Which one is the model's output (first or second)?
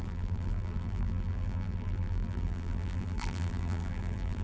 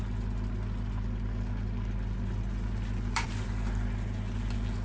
first